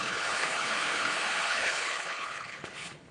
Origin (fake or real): fake